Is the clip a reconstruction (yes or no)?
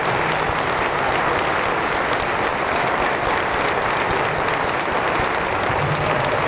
no